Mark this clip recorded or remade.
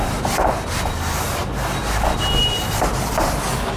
recorded